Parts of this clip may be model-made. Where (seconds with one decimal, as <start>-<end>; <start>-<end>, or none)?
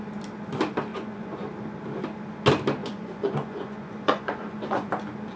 0.9-1.5; 2.8-4.9